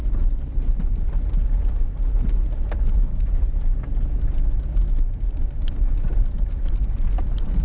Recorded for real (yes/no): yes